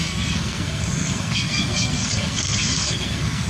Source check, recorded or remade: remade